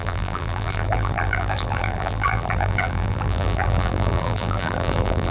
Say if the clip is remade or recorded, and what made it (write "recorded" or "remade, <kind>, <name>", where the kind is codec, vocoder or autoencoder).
remade, vocoder, BigVGAN v2